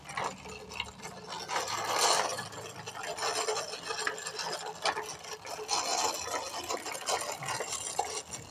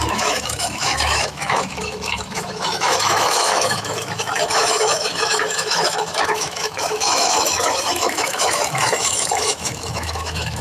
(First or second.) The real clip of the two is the first